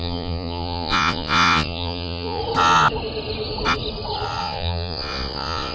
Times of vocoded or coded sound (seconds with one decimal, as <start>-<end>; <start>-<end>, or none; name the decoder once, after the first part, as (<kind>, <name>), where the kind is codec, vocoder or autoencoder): 0.0-2.4 (vocoder, Vocos); 4.4-5.7